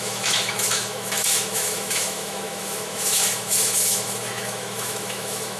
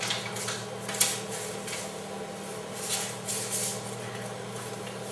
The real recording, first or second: second